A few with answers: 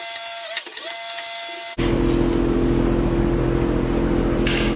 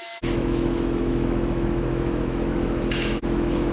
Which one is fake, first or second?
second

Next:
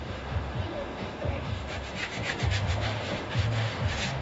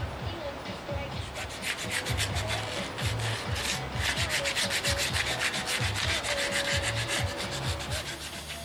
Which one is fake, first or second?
first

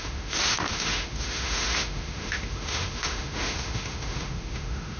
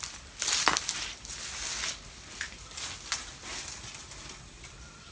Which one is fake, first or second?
first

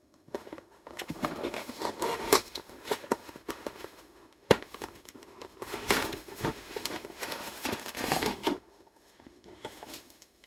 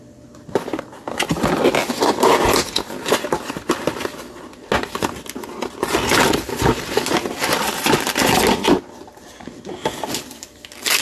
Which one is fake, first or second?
first